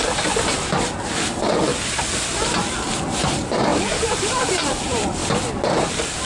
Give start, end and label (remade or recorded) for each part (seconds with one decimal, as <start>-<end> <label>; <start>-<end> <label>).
0.0-1.1 recorded; 1.1-1.7 remade; 1.7-3.3 recorded; 3.3-5.2 remade; 5.2-5.7 recorded; 5.7-6.3 remade